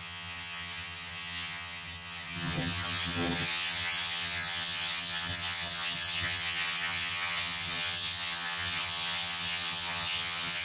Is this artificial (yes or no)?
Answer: yes